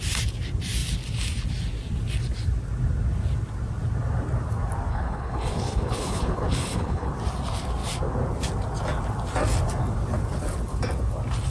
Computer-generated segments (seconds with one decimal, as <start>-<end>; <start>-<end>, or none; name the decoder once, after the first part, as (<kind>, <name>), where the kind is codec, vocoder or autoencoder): 4.9-7.1 (codec, HILCodec)